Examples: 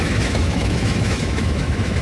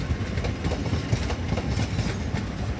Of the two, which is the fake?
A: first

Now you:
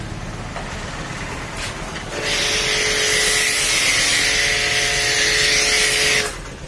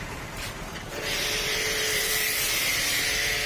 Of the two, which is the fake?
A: second